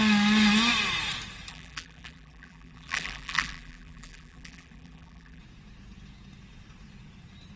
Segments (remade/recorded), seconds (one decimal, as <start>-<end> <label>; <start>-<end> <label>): 0.0-1.5 recorded; 1.5-5.4 remade; 5.4-7.6 recorded